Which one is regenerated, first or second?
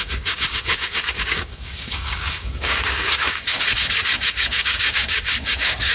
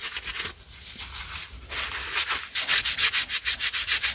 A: first